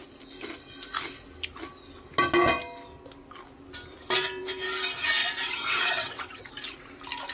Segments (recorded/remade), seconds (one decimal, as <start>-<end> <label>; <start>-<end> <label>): 0.0-5.2 recorded; 5.2-6.5 remade; 6.5-7.3 recorded

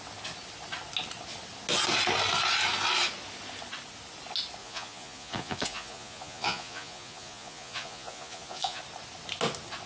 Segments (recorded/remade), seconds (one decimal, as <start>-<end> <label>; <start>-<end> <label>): 0.0-4.6 recorded; 4.6-8.8 remade; 8.8-9.9 recorded

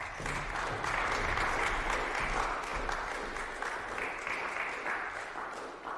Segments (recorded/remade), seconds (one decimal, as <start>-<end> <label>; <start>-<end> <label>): 0.0-6.0 recorded

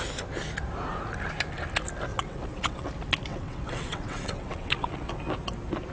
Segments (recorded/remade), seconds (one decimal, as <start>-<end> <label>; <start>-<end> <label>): 0.0-2.1 recorded; 2.1-2.9 remade; 2.9-3.3 recorded; 3.3-5.1 remade; 5.1-5.9 recorded

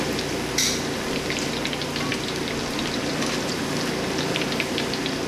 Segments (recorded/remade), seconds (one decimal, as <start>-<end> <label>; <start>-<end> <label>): 0.0-2.1 recorded; 2.1-3.5 remade; 3.5-5.3 recorded